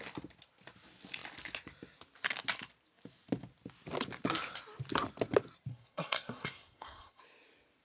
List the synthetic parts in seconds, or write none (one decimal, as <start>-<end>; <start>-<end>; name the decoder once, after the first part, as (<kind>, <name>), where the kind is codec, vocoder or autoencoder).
5.7-7.2 (codec, SNAC)